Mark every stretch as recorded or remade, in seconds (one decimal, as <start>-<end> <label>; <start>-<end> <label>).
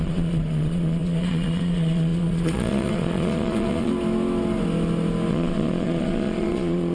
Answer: 0.0-3.9 remade; 3.9-5.3 recorded; 5.3-6.9 remade